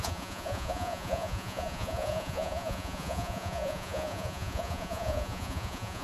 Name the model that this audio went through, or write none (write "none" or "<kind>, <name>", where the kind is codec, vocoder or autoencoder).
vocoder, Vocos